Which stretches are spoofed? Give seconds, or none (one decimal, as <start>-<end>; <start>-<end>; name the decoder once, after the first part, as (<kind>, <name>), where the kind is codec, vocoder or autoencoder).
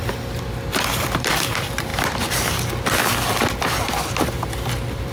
0.0-5.1 (vocoder, BigVGAN v2)